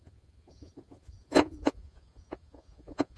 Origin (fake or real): fake